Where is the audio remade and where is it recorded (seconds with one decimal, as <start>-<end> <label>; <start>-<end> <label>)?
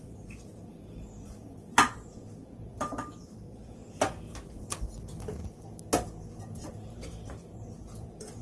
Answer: 0.0-3.8 remade; 3.8-6.4 recorded; 6.4-8.4 remade